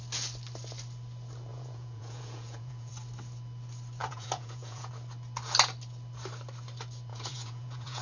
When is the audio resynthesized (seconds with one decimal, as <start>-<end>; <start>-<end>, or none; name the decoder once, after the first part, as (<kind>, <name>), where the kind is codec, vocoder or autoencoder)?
1.5-2.9 (vocoder, Vocos); 4.0-4.9; 7.1-8.0